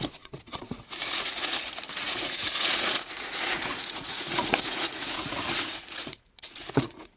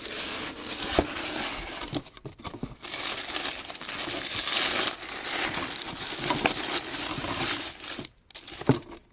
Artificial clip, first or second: first